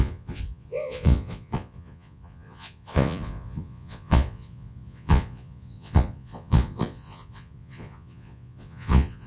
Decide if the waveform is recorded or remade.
remade